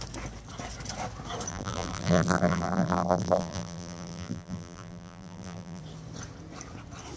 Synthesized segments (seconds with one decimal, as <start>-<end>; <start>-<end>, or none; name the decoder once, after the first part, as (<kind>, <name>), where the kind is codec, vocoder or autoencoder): 1.5-5.8 (vocoder, BigVGAN v2)